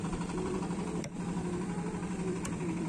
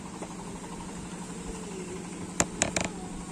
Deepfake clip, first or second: first